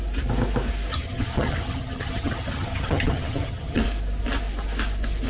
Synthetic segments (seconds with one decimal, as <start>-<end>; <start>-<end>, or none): 0.9-3.8